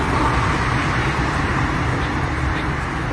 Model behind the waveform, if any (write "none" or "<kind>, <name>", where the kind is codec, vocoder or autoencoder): none